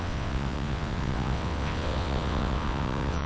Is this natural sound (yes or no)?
no